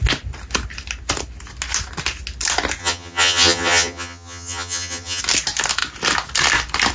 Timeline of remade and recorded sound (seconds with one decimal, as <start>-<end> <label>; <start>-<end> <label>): 0.0-2.8 recorded; 2.8-5.2 remade; 5.2-6.9 recorded